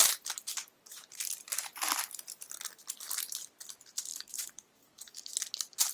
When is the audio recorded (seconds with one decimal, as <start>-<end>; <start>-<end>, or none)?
0.0-4.1; 5.3-5.9